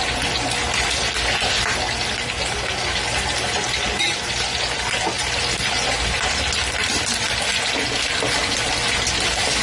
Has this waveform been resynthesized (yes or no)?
no